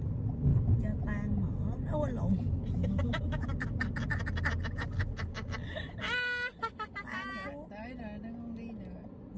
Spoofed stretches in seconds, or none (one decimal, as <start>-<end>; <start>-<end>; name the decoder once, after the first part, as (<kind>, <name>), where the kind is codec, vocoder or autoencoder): none